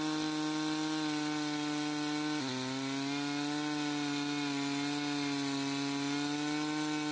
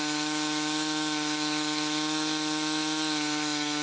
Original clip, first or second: first